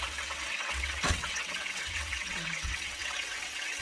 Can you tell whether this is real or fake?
fake